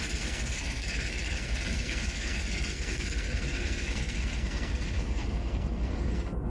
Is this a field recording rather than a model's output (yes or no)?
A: no